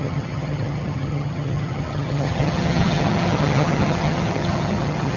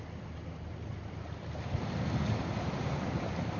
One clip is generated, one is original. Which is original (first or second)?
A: second